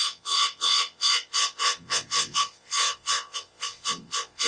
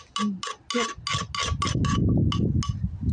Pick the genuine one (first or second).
second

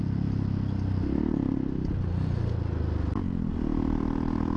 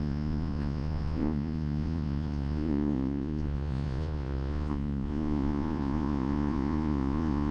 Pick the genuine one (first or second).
first